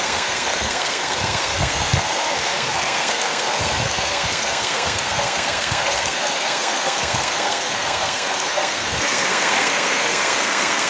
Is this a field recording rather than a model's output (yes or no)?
no